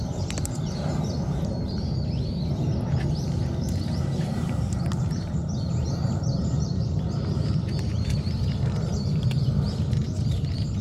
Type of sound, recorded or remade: remade